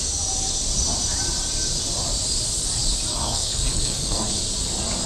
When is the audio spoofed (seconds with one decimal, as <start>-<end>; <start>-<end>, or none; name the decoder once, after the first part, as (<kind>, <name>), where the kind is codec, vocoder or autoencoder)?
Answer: 3.1-4.4 (codec, SNAC)